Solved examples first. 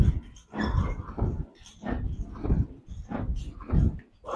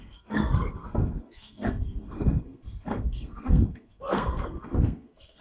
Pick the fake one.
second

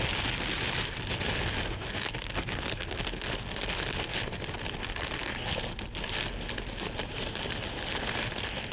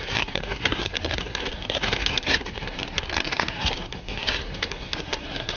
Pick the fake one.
second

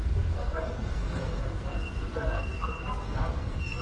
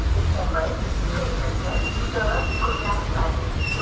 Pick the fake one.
first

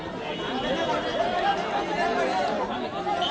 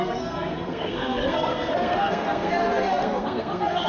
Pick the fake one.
second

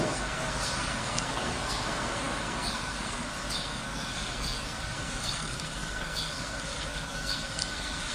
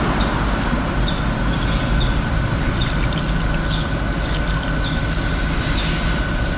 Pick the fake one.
first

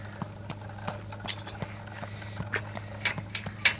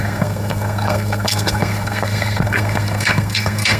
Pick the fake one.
second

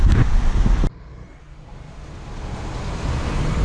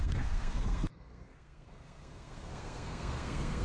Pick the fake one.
second